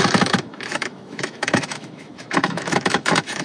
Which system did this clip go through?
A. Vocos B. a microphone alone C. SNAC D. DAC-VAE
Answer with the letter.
D